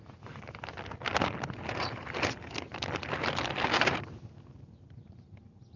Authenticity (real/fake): real